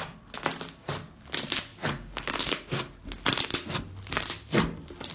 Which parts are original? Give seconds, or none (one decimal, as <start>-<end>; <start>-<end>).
0.0-5.1